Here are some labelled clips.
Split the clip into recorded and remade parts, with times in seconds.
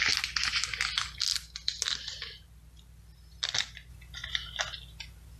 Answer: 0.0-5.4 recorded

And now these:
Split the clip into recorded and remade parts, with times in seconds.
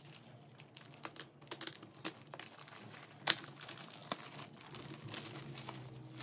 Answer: 0.0-6.2 recorded